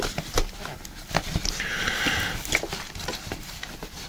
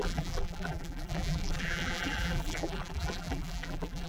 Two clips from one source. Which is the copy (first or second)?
second